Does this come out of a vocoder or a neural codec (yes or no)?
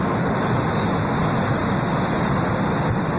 no